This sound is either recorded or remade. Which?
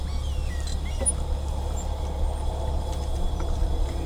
recorded